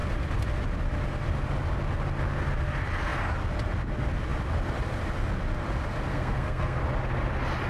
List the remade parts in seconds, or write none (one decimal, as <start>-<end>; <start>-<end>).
6.1-6.8